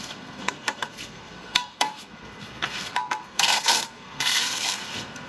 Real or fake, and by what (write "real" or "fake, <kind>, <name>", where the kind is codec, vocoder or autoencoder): fake, codec, SNAC